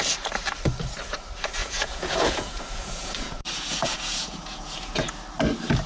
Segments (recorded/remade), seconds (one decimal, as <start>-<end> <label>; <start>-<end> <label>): 0.0-1.6 recorded; 1.6-5.1 remade; 5.1-5.9 recorded